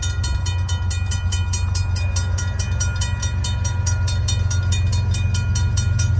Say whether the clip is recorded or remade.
recorded